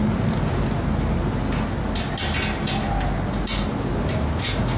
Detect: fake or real real